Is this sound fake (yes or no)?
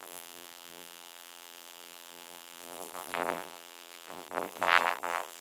yes